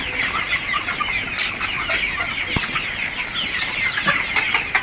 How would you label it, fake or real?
real